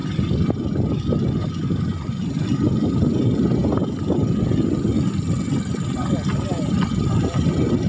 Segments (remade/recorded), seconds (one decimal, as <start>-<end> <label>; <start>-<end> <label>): 0.0-7.9 recorded

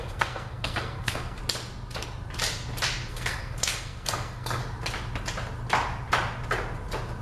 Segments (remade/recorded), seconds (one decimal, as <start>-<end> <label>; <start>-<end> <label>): 0.0-1.4 remade; 1.4-3.1 recorded; 3.1-4.6 remade; 4.6-7.2 recorded

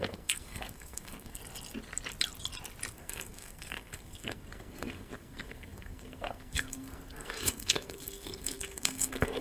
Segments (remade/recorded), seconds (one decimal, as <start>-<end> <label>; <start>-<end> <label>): 0.0-1.4 remade; 1.4-2.9 recorded; 2.9-9.4 remade

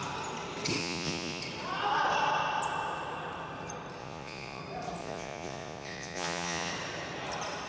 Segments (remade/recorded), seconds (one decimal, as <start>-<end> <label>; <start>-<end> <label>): 0.0-0.8 recorded; 0.8-1.4 remade; 1.4-4.0 recorded; 4.0-4.6 remade; 4.6-5.0 recorded; 5.0-6.7 remade; 6.7-7.7 recorded

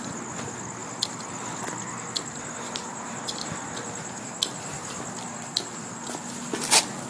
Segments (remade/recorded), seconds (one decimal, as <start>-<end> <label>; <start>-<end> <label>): 0.0-7.1 recorded

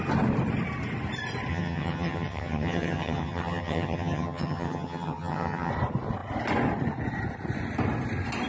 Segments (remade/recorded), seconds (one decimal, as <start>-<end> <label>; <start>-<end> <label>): 0.0-1.5 recorded; 1.5-5.7 remade; 5.7-8.5 recorded

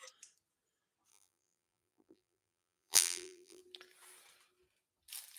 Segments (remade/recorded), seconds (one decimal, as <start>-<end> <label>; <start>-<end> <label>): 0.0-1.1 recorded; 1.1-3.6 remade; 3.6-5.4 recorded